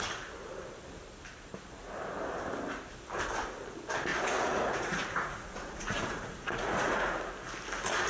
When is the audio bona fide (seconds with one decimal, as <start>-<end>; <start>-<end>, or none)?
0.0-4.1; 7.2-8.1